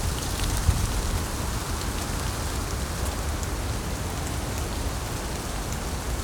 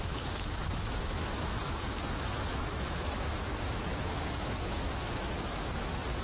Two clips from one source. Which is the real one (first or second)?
first